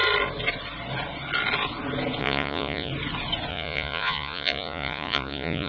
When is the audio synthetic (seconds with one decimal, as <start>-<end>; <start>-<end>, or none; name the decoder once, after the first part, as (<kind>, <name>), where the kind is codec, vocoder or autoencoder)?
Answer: 2.2-2.9 (vocoder, Vocos); 3.5-5.7

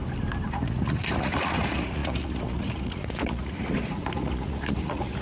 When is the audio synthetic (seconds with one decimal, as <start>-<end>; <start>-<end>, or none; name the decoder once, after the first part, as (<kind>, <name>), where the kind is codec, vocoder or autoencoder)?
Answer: 0.5-5.2 (vocoder, Vocos)

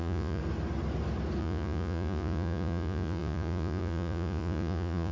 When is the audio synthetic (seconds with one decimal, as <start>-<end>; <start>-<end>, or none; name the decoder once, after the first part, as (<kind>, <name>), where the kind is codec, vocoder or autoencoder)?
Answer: 0.0-0.4 (vocoder, Vocos); 1.4-5.1

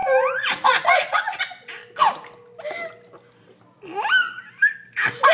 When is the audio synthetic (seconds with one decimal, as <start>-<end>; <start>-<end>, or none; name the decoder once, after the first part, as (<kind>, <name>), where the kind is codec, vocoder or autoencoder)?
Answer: 0.0-1.8 (vocoder, Vocos)

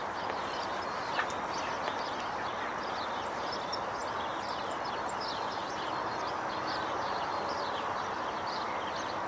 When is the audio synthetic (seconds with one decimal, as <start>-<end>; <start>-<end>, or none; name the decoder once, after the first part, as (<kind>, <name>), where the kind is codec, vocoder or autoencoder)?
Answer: none

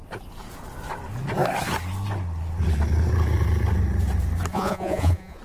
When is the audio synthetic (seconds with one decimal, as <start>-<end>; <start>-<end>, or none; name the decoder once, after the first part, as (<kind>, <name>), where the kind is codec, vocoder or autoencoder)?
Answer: 4.5-5.4 (vocoder, Vocos)

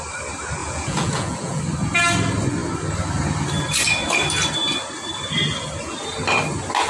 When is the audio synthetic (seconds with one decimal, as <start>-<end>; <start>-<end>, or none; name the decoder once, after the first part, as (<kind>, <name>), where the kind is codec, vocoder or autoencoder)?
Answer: 0.6-1.6 (vocoder, Vocos)

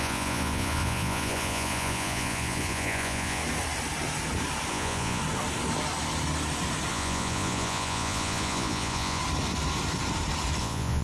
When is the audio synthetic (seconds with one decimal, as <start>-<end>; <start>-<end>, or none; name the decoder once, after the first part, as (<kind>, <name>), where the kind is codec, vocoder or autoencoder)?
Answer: 0.0-3.4 (vocoder, Vocos); 4.7-5.2; 6.9-9.2; 10.6-11.0